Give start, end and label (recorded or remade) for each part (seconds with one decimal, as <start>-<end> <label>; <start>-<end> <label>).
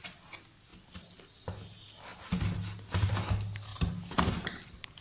0.0-5.0 recorded